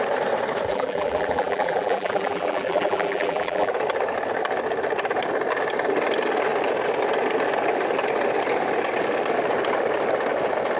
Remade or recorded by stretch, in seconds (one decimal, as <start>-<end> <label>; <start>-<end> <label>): 0.0-0.7 recorded; 0.7-3.7 remade; 3.7-10.8 recorded